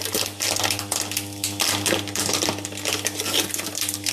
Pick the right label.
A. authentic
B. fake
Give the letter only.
A